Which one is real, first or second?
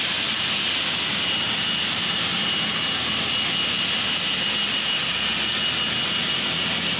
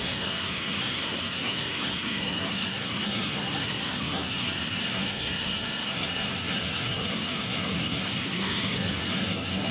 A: first